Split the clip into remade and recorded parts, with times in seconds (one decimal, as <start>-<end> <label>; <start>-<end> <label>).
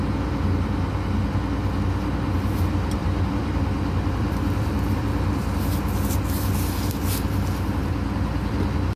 0.0-3.0 recorded; 3.0-5.6 remade; 5.6-7.8 recorded; 7.8-9.0 remade